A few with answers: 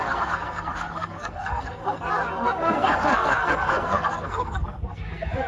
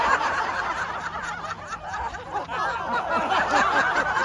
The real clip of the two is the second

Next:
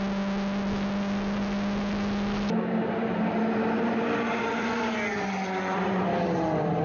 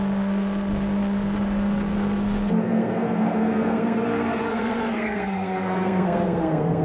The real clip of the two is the first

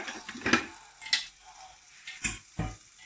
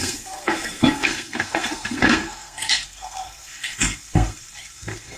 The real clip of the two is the first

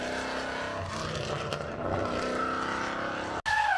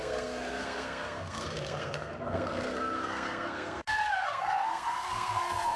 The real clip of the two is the first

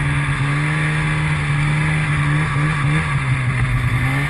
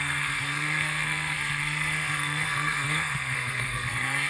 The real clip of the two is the first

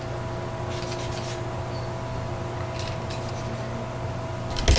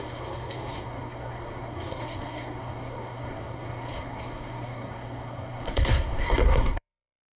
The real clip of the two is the first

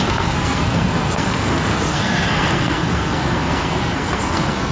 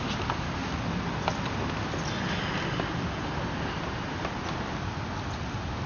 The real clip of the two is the second